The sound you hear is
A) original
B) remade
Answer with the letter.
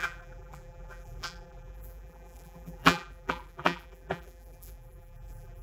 B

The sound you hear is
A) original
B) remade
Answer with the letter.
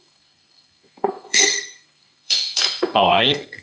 B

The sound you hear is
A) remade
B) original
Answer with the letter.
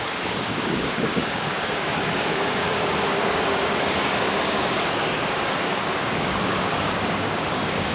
A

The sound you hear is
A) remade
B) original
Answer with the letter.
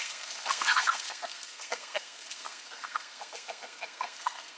A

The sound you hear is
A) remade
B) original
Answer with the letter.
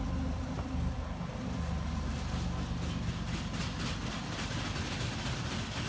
B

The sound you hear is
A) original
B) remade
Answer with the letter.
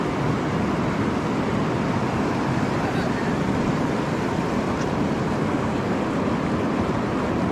A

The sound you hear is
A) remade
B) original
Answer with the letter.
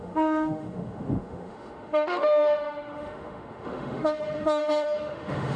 A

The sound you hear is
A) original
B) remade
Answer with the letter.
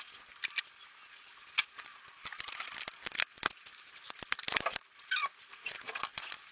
A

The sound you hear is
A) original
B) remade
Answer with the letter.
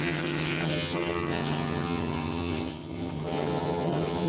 B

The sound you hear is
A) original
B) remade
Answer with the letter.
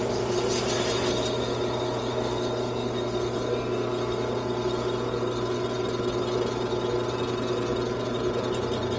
A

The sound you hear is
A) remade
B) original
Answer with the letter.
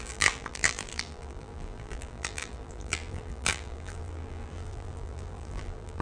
A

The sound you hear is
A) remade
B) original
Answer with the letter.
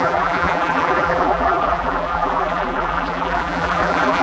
A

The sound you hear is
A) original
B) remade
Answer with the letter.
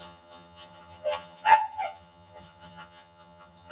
B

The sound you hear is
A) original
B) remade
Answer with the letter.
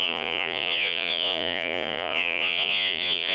B